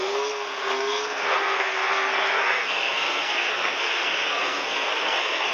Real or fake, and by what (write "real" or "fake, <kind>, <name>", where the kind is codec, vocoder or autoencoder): fake, codec, SNAC